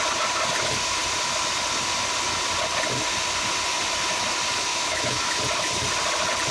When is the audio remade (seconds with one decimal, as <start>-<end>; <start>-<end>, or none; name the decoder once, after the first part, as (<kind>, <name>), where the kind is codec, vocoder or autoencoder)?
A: 4.7-5.4 (autoencoder, DAC-VAE)